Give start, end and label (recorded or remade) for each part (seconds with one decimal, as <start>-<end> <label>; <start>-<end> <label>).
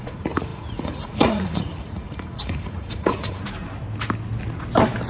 0.0-3.4 remade; 3.4-5.1 recorded